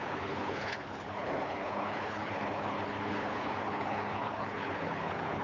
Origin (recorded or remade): remade